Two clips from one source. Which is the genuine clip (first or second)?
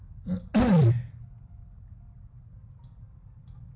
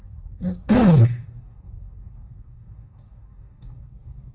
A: first